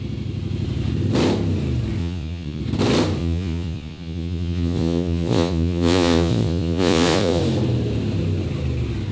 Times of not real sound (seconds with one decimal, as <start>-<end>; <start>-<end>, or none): 2.0-2.6; 3.2-7.4